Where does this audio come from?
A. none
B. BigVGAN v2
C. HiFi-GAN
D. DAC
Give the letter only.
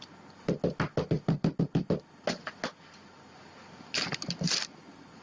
A